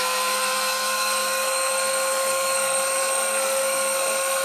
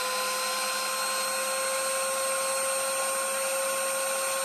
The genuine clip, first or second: second